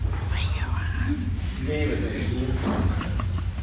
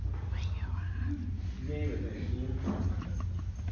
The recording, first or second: second